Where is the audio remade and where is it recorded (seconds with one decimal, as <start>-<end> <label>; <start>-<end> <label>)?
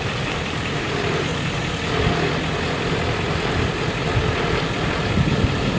0.0-1.3 remade; 1.3-4.8 recorded; 4.8-5.8 remade